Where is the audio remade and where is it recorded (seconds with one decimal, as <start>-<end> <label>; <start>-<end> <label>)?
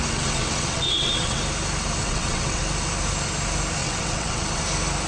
0.0-1.4 remade; 1.4-2.0 recorded; 2.0-2.6 remade; 2.6-3.8 recorded; 3.8-4.6 remade; 4.6-5.1 recorded